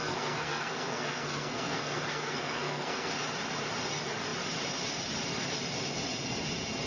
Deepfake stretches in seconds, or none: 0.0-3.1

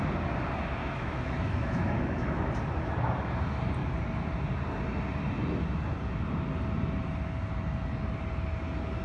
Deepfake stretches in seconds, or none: 0.8-2.5

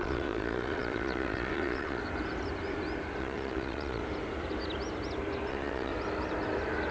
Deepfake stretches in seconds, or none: 0.0-2.0; 3.2-4.0; 5.5-5.9

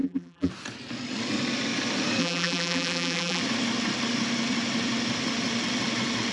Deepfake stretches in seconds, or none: 0.0-0.5; 2.2-3.4

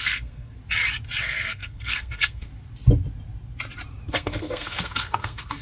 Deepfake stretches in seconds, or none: 0.0-0.6; 1.2-2.5; 4.1-5.6

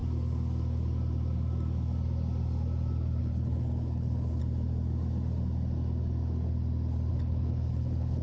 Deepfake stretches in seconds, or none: 3.2-4.4; 7.1-8.2

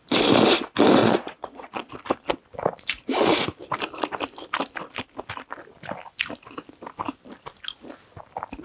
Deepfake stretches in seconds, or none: 1.0-1.9